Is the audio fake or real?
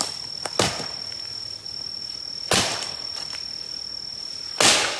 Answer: real